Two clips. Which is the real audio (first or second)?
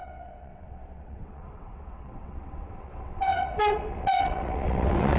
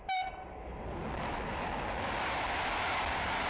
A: second